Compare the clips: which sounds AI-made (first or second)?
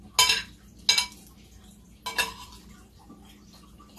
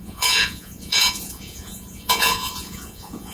second